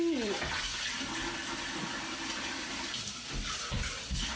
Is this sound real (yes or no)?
yes